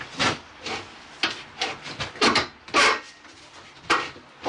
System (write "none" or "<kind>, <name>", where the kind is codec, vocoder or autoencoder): none